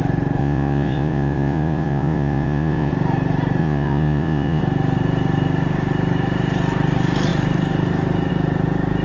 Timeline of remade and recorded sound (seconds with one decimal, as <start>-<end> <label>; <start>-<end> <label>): 0.0-0.4 recorded; 0.4-2.9 remade; 2.9-3.6 recorded; 3.6-4.6 remade; 4.6-9.0 recorded